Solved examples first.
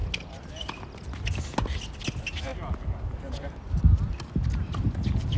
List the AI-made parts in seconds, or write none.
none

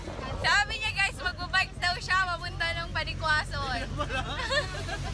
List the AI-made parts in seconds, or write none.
none

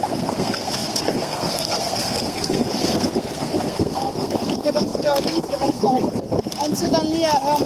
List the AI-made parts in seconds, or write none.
0.0-6.9

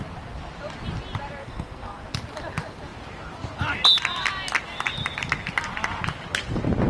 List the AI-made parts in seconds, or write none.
1.4-2.0